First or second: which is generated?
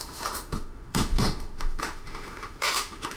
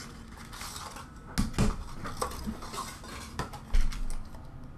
first